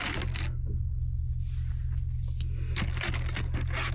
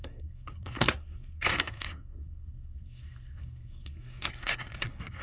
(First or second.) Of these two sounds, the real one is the first